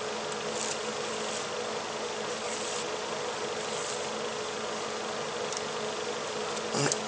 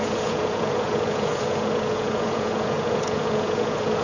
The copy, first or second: second